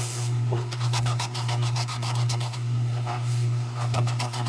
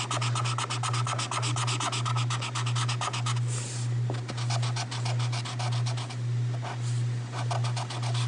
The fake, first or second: first